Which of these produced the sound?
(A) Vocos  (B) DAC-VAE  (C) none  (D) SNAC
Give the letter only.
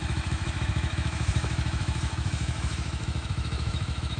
B